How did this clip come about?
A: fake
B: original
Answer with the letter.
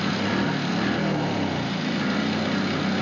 B